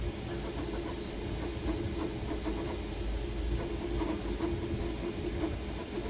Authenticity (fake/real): real